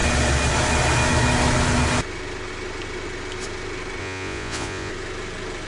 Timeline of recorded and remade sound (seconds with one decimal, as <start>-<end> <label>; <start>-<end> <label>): 0.0-4.0 recorded; 4.0-4.9 remade; 4.9-5.7 recorded

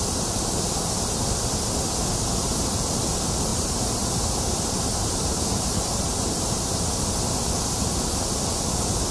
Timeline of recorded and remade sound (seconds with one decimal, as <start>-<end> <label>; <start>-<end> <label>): 0.0-3.5 recorded; 3.5-6.9 remade; 6.9-9.1 recorded

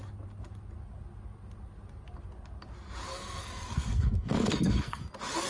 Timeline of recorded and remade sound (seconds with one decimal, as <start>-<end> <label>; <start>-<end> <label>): 0.0-3.1 recorded; 3.1-5.0 remade; 5.0-5.5 recorded